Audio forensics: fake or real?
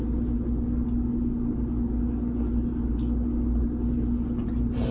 real